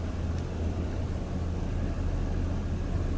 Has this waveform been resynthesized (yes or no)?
no